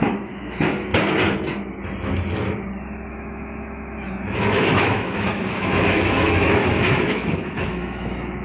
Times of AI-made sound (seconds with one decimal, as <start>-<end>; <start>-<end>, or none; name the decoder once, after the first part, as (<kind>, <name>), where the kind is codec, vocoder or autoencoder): 0.0-0.9 (autoencoder, DAC-VAE); 3.1-8.4